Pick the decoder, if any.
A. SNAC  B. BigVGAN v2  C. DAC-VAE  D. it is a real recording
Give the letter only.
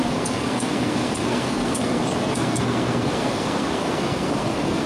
A